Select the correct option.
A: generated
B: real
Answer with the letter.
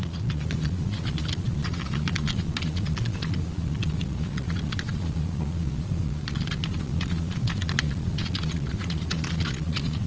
A